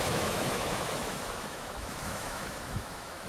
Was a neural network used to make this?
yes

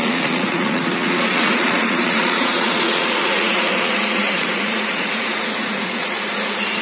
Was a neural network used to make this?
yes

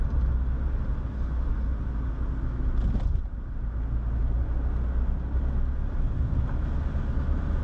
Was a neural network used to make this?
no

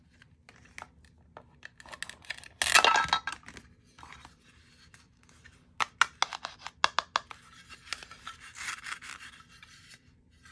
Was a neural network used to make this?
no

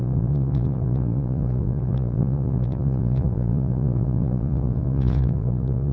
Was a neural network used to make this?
yes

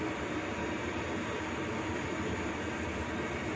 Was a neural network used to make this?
no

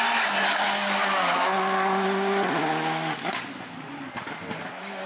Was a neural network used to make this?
no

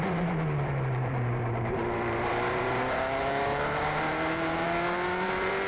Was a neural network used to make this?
yes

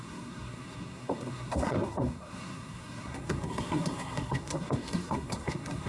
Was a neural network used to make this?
yes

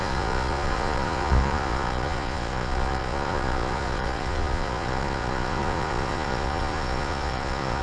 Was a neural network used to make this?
yes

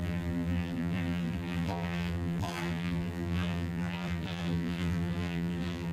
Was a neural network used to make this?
yes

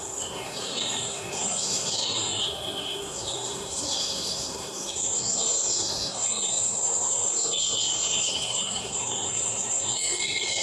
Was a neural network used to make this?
yes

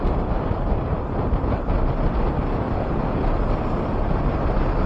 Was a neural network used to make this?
yes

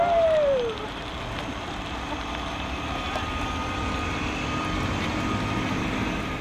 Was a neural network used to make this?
no